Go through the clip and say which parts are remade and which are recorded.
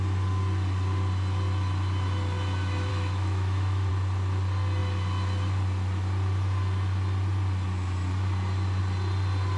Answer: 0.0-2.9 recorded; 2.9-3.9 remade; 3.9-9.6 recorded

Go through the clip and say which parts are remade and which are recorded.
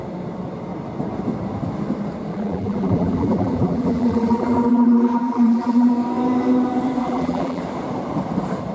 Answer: 0.0-2.3 recorded; 2.3-5.9 remade; 5.9-7.0 recorded; 7.0-7.6 remade; 7.6-8.7 recorded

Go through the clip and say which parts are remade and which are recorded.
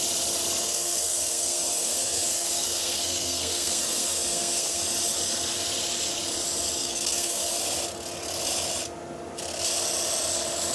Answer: 0.0-0.6 recorded; 0.6-4.8 remade; 4.8-6.8 recorded; 6.8-7.5 remade; 7.5-10.7 recorded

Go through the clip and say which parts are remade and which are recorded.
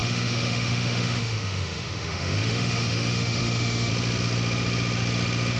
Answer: 0.0-3.9 remade; 3.9-5.6 recorded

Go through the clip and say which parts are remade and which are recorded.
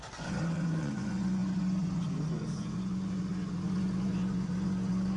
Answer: 0.0-5.2 remade